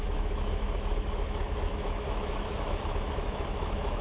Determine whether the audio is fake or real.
fake